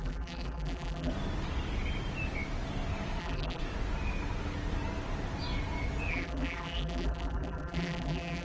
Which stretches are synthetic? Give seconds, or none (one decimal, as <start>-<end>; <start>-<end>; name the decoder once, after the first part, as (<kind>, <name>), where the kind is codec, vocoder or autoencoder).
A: 0.0-1.1 (vocoder, BigVGAN v2); 3.2-3.6; 6.1-8.4